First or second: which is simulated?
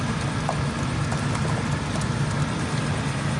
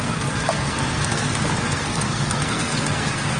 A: second